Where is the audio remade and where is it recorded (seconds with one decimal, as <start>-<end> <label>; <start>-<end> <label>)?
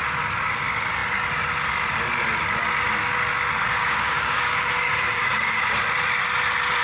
0.0-3.8 recorded; 3.8-5.6 remade; 5.6-6.8 recorded